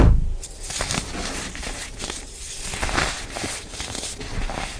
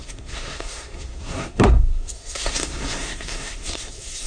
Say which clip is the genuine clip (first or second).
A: first